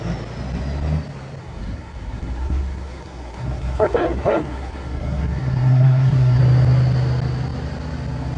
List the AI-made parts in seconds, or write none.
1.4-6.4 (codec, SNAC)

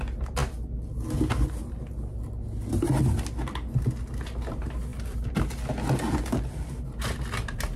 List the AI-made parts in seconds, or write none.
none

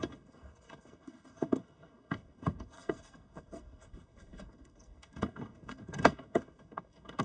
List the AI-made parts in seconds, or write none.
0.0-7.2 (codec, SNAC)

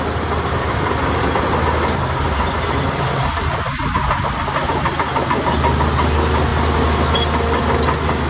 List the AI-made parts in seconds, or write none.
none